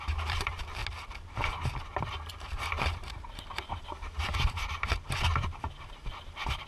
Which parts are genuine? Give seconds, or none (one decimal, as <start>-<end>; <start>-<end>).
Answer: 0.8-2.3